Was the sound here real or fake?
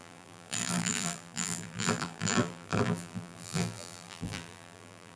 fake